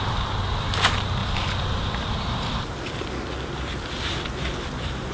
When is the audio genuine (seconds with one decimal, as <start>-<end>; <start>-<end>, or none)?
0.0-5.1